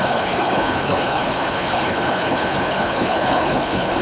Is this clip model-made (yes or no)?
yes